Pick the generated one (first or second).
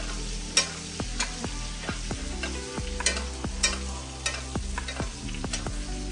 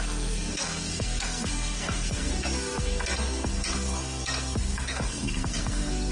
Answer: second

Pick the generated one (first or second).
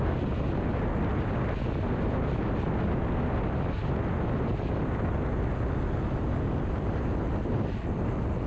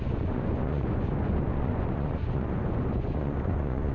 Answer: second